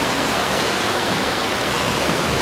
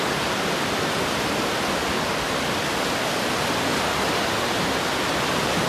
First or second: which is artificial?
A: first